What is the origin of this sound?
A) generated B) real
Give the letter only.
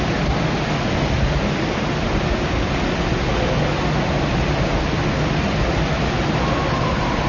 B